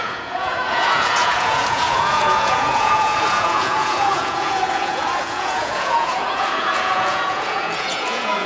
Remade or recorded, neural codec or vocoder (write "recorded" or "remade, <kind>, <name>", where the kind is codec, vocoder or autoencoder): remade, vocoder, Vocos